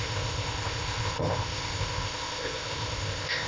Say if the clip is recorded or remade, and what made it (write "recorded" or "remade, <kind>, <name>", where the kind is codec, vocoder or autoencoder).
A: remade, codec, ZipCodec